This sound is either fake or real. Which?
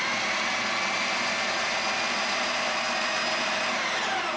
real